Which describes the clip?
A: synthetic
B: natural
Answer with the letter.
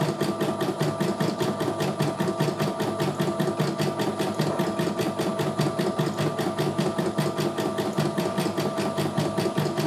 B